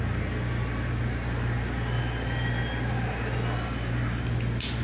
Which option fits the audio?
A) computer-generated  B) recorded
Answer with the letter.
B